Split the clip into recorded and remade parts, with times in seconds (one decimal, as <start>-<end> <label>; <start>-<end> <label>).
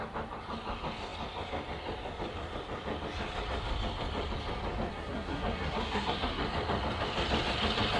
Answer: 0.0-4.9 recorded; 4.9-6.4 remade; 6.4-8.0 recorded